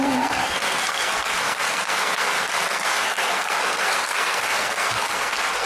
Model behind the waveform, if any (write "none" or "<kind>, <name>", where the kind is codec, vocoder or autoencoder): codec, SNAC